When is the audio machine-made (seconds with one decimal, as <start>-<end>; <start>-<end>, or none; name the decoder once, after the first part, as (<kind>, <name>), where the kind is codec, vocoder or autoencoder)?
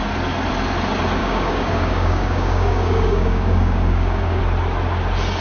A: 1.2-4.4 (codec, DAC)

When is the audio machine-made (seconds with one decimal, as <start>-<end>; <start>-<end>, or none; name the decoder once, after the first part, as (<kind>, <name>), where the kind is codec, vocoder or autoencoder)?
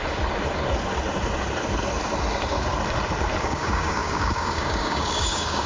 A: 3.4-5.7 (codec, DAC)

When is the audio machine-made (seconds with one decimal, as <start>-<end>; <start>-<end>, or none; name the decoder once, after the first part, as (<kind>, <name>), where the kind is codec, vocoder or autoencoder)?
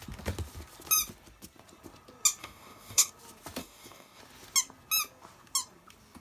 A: 2.4-3.1 (codec, DAC); 3.6-4.2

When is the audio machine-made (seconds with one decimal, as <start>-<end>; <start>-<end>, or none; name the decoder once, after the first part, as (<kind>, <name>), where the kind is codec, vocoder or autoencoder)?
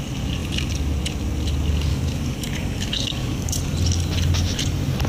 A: 1.9-3.5 (codec, DAC)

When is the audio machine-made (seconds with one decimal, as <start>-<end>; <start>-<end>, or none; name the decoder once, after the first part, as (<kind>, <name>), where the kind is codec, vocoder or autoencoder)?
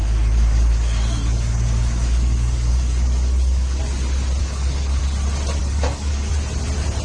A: 0.0-3.8 (codec, DAC); 4.4-5.0; 5.6-6.3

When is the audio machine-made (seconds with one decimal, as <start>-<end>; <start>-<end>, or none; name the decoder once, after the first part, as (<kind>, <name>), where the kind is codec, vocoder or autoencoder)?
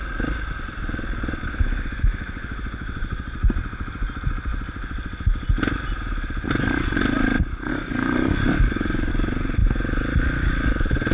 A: 7.7-9.1 (codec, DAC)